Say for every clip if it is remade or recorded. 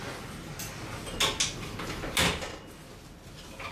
recorded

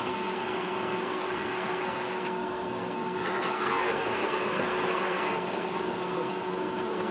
remade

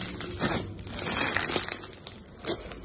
recorded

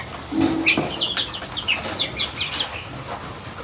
recorded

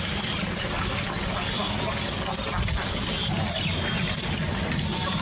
recorded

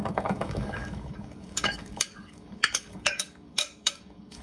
remade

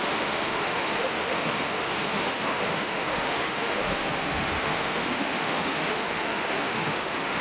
remade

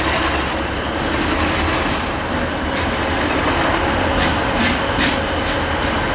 recorded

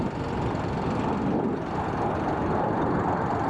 remade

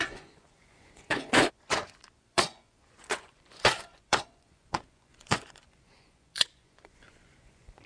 remade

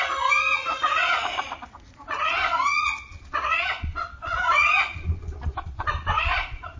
remade